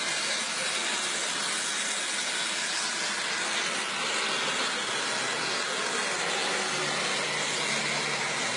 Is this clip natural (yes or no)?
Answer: yes